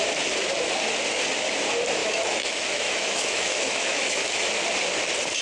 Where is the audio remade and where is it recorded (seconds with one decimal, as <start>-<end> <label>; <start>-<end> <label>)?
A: 0.0-2.0 recorded; 2.0-4.5 remade; 4.5-5.4 recorded